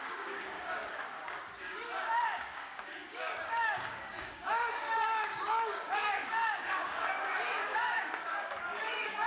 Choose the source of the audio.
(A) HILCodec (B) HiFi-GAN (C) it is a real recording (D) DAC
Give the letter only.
D